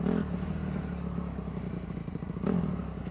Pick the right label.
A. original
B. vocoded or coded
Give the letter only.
A